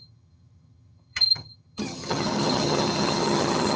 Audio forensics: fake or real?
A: fake